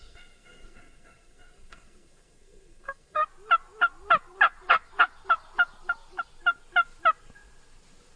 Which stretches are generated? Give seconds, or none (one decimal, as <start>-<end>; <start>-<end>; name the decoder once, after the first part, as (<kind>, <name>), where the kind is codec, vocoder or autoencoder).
0.0-3.2 (codec, SNAC)